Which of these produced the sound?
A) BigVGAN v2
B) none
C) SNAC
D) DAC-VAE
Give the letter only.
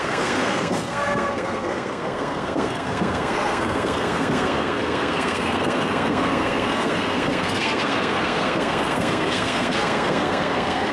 C